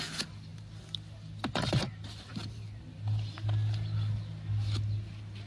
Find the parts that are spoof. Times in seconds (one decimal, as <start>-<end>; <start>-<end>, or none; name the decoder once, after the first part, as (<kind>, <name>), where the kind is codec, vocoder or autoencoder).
2.3-2.8 (vocoder, BigVGAN v2)

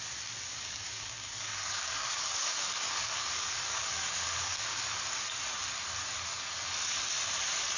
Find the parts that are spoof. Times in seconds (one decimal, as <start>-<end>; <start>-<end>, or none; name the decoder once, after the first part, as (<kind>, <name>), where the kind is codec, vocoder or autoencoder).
0.5-5.0 (codec, DAC)